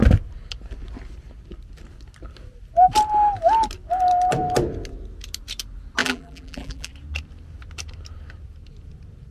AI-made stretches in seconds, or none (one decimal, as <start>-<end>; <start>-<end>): 6.0-6.9